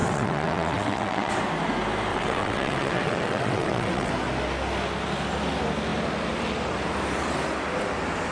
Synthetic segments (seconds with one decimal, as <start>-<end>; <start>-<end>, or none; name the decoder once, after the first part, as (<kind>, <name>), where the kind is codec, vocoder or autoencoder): 0.0-1.3 (vocoder, WaveNeXt); 2.1-4.1